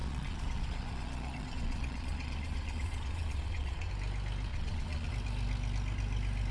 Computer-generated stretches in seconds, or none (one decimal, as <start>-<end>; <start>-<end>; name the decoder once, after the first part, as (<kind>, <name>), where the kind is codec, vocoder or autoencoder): 0.0-3.9 (vocoder, Vocos); 4.5-5.1